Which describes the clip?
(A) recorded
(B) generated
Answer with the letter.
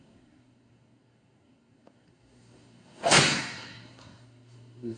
B